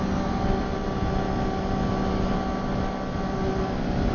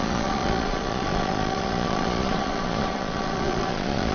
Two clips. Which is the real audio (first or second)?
first